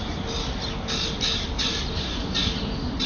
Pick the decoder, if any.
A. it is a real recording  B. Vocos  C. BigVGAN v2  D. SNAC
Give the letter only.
A